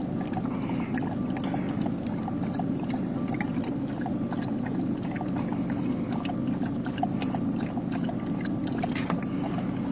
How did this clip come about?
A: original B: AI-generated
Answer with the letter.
A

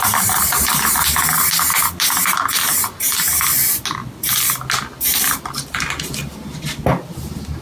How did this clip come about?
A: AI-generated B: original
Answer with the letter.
B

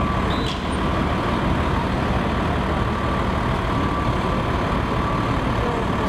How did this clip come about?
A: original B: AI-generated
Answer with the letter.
A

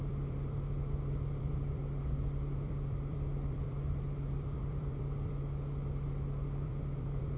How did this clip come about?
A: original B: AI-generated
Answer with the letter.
B